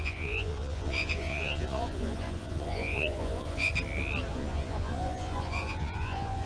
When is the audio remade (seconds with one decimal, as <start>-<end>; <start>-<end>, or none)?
0.0-3.7; 4.3-6.5